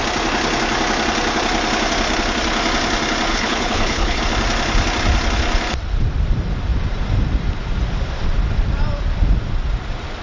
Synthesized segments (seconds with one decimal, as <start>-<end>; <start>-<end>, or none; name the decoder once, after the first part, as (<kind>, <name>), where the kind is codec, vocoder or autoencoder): 3.3-4.2 (codec, HILCodec)